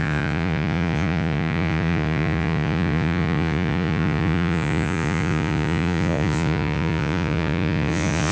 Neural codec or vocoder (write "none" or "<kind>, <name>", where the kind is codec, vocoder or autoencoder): vocoder, Vocos